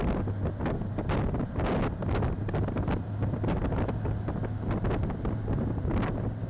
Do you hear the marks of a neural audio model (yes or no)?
no